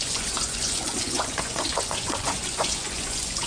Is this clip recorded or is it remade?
remade